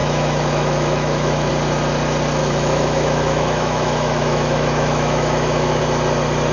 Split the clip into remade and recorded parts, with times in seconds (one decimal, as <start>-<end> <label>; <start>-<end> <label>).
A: 0.0-1.5 remade; 1.5-2.4 recorded; 2.4-5.8 remade; 5.8-6.5 recorded